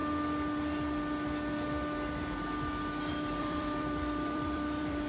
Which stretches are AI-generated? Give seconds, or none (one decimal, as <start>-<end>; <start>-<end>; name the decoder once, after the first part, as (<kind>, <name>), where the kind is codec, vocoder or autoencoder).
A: 3.1-5.1 (vocoder, BigVGAN v2)